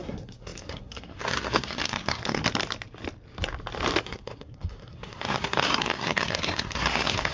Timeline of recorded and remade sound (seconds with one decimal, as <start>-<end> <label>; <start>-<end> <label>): 0.0-2.4 remade; 2.4-4.0 recorded; 4.0-7.3 remade